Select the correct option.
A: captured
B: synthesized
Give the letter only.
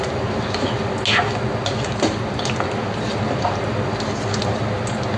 A